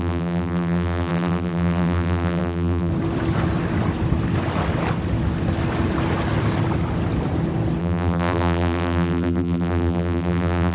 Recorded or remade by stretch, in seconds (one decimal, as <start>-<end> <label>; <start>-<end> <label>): 0.0-2.9 remade; 2.9-7.8 recorded; 7.8-10.7 remade